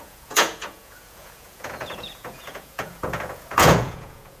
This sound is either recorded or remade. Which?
remade